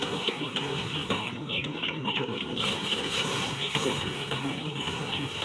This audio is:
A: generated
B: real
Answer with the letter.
A